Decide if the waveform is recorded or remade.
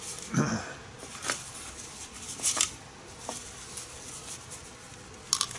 recorded